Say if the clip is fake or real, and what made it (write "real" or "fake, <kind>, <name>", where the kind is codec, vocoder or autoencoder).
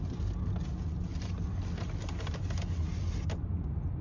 real